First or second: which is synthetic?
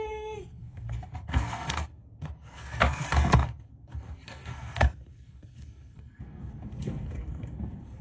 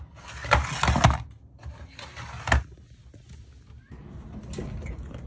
first